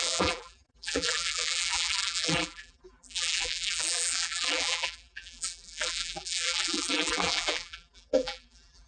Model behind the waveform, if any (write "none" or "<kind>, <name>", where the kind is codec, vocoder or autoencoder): vocoder, BigVGAN v2